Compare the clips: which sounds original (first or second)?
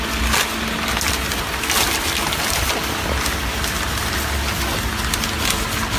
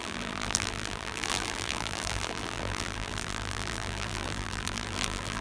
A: first